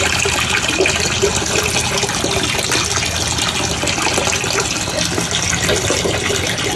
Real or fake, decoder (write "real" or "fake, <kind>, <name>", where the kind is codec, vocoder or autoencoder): real